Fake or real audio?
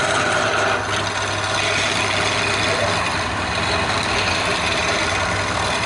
real